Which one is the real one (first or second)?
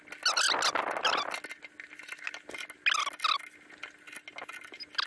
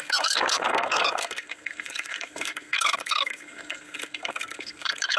first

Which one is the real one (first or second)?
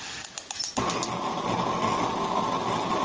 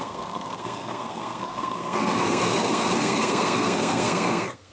first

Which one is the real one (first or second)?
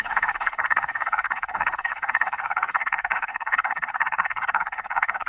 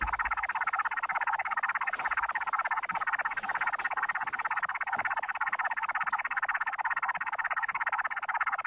second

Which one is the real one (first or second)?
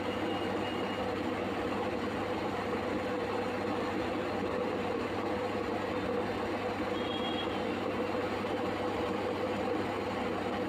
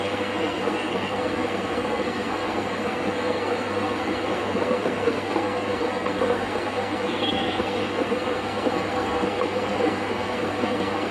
first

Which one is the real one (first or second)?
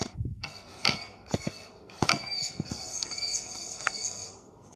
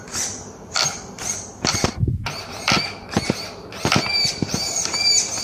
second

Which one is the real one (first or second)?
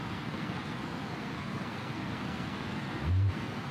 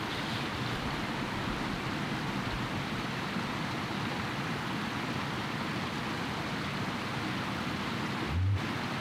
second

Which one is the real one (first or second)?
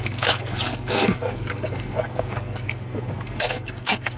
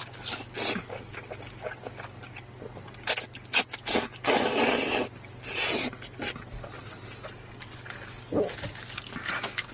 second